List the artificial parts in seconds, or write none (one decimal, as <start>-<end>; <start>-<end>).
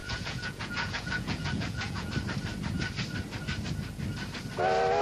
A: 0.0-2.1